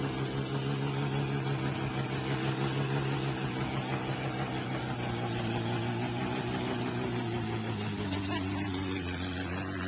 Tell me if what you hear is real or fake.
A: real